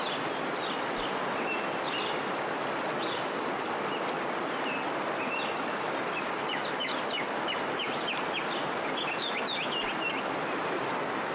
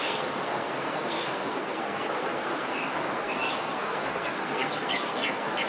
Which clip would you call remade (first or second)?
second